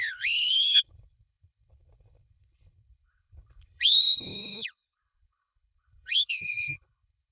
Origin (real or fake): fake